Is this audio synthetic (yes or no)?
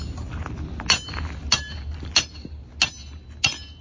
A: no